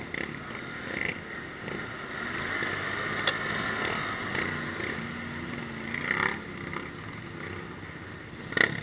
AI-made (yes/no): no